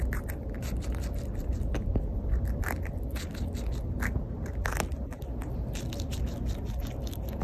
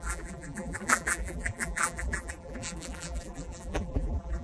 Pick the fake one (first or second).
second